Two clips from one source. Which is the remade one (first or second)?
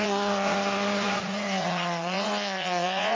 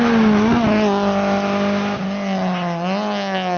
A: first